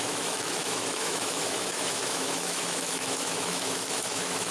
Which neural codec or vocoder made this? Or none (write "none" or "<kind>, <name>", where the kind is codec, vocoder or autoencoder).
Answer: autoencoder, DAC-VAE